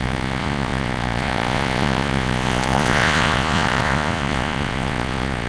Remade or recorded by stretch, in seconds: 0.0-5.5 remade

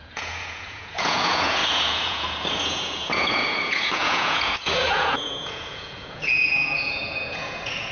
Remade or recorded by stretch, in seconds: 0.0-7.9 remade

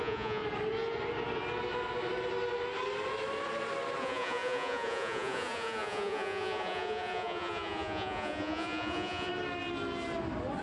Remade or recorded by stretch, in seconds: 0.0-0.4 remade; 0.4-4.0 recorded; 4.0-9.3 remade; 9.3-10.6 recorded

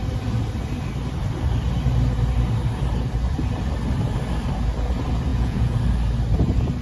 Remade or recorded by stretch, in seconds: 0.0-5.3 recorded; 5.3-5.8 remade; 5.8-6.8 recorded

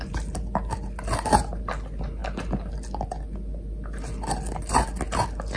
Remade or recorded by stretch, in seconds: 0.0-5.6 recorded

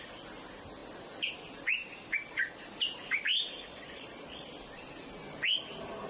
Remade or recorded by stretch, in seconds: 0.0-3.7 recorded; 3.7-4.5 remade; 4.5-6.1 recorded